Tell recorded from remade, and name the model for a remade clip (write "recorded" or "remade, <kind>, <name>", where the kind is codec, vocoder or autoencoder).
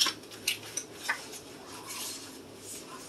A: recorded